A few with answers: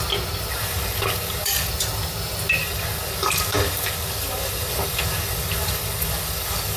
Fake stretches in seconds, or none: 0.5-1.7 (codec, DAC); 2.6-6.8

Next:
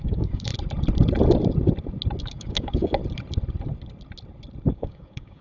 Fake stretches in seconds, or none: 0.0-0.5 (codec, DAC); 2.2-3.0; 4.7-5.4

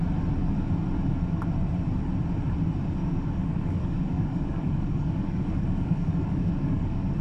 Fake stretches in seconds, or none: 3.0-7.2 (codec, DAC)

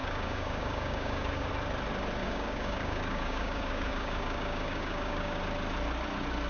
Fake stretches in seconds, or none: 0.0-1.5 (codec, DAC); 2.2-5.4